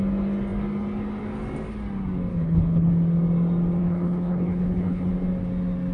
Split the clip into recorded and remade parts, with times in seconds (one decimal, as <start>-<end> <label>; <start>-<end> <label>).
0.0-2.3 recorded; 2.3-2.9 remade; 2.9-3.8 recorded; 3.8-5.1 remade; 5.1-5.9 recorded